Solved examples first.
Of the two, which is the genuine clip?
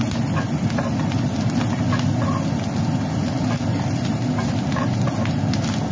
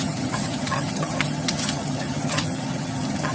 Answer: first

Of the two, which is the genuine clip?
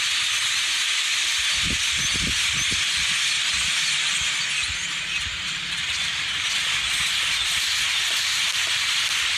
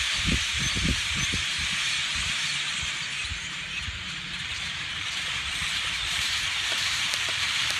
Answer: first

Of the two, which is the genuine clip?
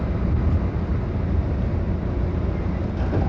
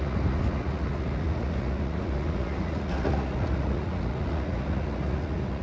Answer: first